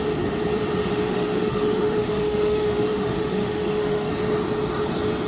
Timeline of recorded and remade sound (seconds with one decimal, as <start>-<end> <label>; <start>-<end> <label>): 0.0-0.9 recorded; 0.9-4.1 remade; 4.1-5.3 recorded